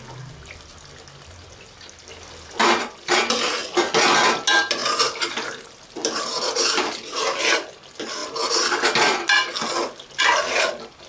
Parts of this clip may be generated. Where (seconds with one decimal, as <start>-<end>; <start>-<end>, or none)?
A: none